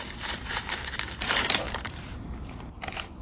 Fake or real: fake